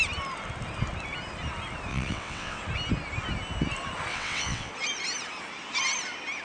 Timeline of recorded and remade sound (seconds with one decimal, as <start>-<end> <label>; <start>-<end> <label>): 0.0-1.9 recorded; 1.9-2.6 remade; 2.6-4.1 recorded; 4.1-4.7 remade; 4.7-6.4 recorded